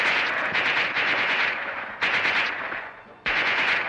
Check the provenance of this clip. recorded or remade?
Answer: remade